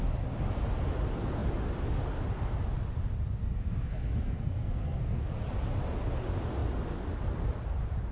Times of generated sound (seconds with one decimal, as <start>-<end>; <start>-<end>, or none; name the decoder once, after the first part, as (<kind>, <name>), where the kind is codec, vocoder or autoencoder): 3.4-5.3 (codec, SNAC)